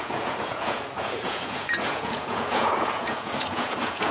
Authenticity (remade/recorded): remade